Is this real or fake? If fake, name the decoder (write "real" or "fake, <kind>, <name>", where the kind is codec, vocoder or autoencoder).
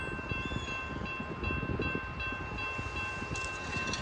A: real